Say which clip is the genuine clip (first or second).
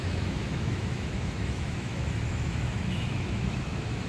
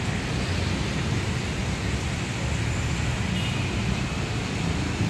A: second